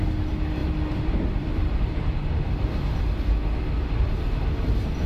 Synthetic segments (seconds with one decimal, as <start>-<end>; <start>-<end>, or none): 0.6-3.0